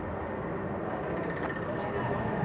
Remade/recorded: recorded